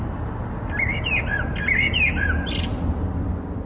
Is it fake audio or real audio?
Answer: real